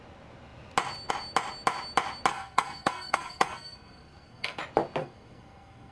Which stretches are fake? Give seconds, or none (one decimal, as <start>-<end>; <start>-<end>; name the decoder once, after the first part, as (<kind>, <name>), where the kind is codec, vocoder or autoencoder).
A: 2.3-4.6 (codec, SNAC); 5.0-5.9